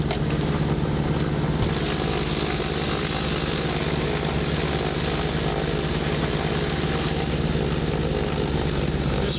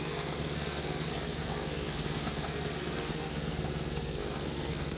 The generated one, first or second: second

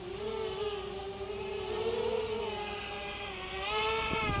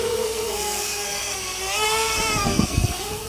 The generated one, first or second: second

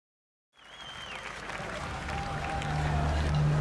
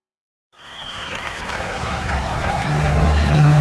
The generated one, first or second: second